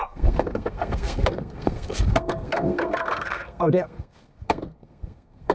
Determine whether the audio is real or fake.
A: fake